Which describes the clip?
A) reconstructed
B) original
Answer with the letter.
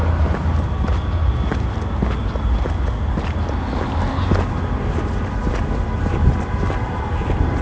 B